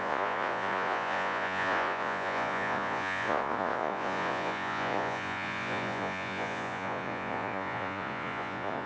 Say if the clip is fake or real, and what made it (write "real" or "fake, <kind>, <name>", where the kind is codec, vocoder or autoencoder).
fake, vocoder, Vocos